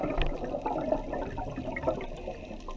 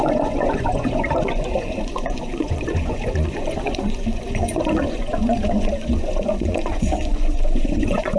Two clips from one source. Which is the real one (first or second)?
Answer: first